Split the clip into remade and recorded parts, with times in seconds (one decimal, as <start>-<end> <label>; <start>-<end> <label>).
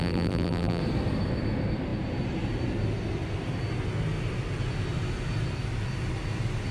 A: 0.0-0.8 remade; 0.8-6.7 recorded